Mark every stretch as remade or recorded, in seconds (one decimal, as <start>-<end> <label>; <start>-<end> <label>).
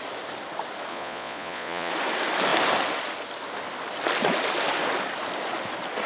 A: 0.0-0.9 recorded; 0.9-1.9 remade; 1.9-6.1 recorded